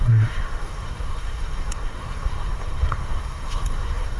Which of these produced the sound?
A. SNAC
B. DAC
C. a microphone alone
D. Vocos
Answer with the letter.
A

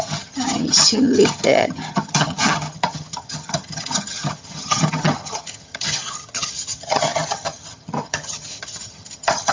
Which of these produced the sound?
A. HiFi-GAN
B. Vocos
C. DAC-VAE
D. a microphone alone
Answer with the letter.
A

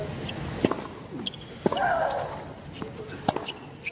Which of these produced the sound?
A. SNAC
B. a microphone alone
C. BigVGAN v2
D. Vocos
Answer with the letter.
B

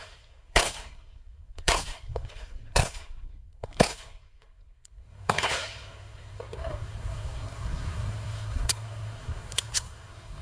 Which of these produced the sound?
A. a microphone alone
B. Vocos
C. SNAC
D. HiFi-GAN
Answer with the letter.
C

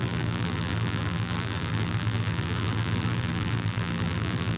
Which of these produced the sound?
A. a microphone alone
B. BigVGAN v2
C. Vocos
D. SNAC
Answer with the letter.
B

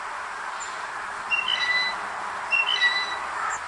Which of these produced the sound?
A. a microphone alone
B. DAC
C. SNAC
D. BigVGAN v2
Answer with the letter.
A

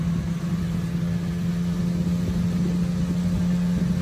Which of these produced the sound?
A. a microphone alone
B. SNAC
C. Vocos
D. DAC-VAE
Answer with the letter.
A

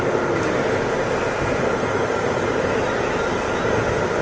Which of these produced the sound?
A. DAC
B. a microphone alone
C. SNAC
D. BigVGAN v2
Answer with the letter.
B